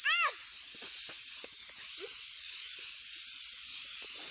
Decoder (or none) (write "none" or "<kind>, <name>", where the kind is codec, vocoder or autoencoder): none